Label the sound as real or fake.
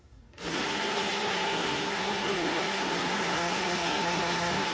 fake